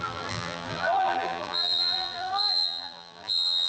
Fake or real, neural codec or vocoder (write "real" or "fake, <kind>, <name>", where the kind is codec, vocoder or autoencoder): fake, vocoder, BigVGAN v2